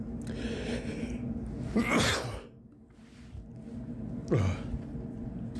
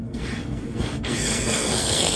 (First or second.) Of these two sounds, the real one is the first